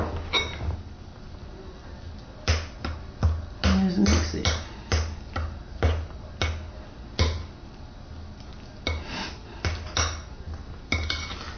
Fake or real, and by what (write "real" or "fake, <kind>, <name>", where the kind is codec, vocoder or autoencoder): real